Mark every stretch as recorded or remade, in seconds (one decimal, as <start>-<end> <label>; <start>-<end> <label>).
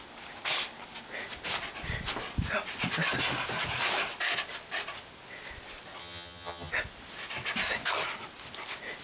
0.0-6.0 recorded; 6.0-6.7 remade; 6.7-9.0 recorded